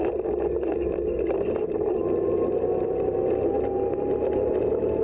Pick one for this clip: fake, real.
real